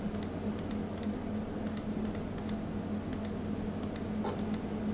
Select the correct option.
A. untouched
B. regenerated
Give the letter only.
A